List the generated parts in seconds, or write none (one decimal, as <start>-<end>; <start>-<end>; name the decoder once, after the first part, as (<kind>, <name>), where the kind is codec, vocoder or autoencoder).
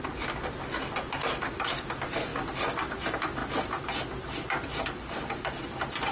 none